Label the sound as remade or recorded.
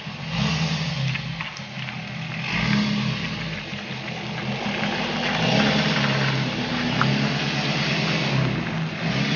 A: recorded